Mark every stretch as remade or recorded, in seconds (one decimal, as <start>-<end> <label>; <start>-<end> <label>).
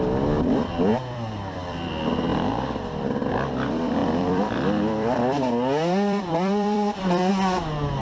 0.0-0.9 recorded; 0.9-1.9 remade; 1.9-4.0 recorded; 4.0-7.3 remade; 7.3-8.0 recorded